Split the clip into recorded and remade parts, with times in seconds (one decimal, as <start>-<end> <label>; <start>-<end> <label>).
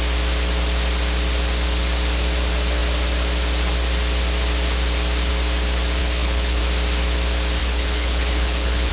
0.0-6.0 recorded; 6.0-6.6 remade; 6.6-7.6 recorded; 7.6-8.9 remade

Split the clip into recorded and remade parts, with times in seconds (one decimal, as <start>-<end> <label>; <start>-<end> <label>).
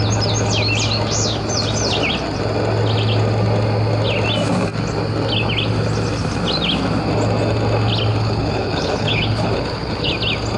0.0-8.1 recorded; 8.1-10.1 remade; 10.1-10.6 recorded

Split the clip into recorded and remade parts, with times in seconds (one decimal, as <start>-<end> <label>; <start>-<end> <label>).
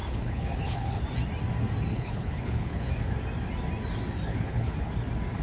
0.0-1.0 remade; 1.0-1.9 recorded; 1.9-2.9 remade; 2.9-4.3 recorded; 4.3-4.9 remade; 4.9-5.4 recorded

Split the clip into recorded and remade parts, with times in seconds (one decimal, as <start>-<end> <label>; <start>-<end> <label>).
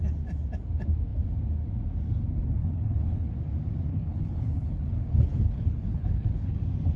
0.0-2.6 recorded; 2.6-3.3 remade; 3.3-3.9 recorded; 3.9-6.6 remade; 6.6-7.0 recorded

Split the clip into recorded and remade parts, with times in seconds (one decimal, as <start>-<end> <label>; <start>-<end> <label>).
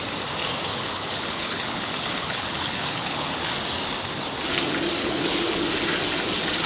0.0-0.7 recorded; 0.7-3.4 remade; 3.4-5.0 recorded; 5.0-5.6 remade; 5.6-6.7 recorded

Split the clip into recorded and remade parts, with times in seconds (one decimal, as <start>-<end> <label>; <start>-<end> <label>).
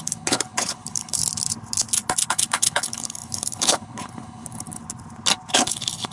0.0-1.2 remade; 1.2-2.3 recorded; 2.3-4.8 remade; 4.8-5.5 recorded; 5.5-6.1 remade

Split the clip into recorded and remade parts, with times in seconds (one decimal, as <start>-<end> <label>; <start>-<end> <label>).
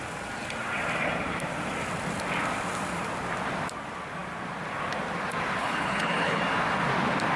0.0-5.6 recorded; 5.6-6.4 remade; 6.4-7.4 recorded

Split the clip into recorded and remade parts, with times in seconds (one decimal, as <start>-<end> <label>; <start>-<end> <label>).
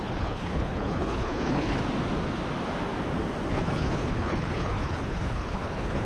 0.0-1.8 remade; 1.8-3.5 recorded; 3.5-6.0 remade